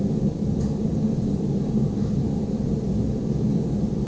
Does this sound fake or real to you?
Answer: real